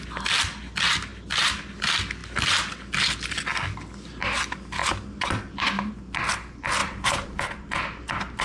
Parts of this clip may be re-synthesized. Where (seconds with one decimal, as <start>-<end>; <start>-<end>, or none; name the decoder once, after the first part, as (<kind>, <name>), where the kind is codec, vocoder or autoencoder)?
4.8-5.6 (vocoder, BigVGAN v2); 6.8-7.4